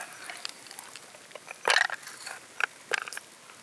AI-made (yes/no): no